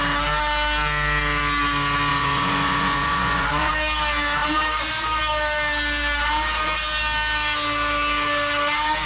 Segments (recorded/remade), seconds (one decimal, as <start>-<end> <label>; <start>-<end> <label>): 0.0-2.1 recorded; 2.1-3.7 remade; 3.7-9.1 recorded